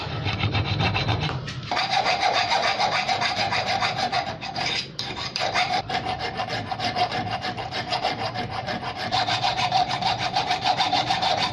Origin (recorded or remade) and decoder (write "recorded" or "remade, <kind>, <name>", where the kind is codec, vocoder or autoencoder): remade, vocoder, BigVGAN v2